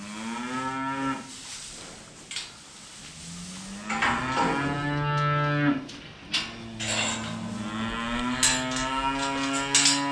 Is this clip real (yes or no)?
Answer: yes